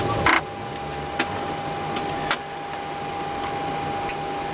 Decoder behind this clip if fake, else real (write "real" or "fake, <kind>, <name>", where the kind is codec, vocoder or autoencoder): real